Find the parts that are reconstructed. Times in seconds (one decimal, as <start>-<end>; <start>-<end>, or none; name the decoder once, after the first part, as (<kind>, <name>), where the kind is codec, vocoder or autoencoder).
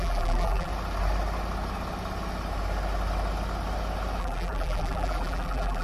0.0-0.7 (vocoder, BigVGAN v2); 4.2-5.8